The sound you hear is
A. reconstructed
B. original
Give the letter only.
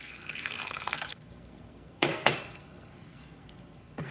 A